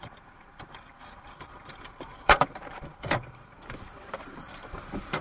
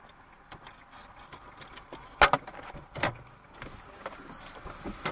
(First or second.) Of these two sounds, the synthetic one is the first